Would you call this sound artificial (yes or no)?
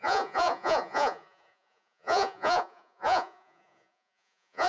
yes